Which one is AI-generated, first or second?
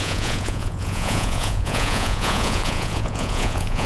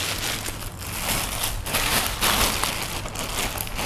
first